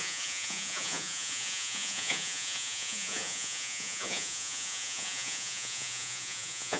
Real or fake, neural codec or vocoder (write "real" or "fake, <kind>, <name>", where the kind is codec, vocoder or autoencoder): fake, vocoder, Vocos